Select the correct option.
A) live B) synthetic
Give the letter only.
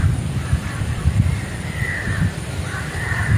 B